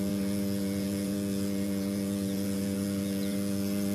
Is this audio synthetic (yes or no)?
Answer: yes